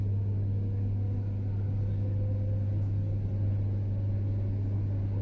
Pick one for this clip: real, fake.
real